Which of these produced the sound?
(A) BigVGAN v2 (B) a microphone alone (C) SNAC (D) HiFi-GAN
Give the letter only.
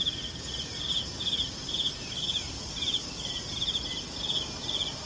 B